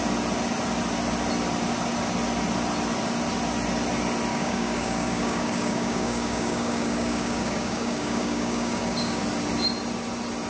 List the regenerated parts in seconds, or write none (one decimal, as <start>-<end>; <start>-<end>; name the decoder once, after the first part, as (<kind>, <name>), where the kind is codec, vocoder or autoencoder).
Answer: 4.3-9.2 (codec, DAC)